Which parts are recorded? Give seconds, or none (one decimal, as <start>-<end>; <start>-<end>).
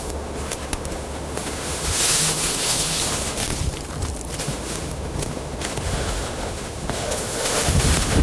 3.5-4.4